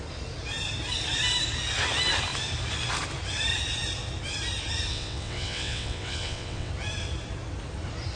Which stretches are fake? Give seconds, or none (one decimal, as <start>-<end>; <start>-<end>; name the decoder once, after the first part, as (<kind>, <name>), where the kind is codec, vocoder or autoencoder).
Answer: 4.9-6.7 (vocoder, WaveNeXt)

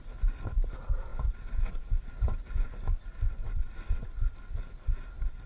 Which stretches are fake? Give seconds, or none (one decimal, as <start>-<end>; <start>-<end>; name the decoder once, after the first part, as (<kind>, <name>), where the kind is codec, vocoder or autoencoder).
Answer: 3.4-4.1 (vocoder, WaveNeXt)

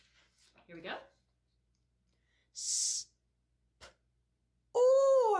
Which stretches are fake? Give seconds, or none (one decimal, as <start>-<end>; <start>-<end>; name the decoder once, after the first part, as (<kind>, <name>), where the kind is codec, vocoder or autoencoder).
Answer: none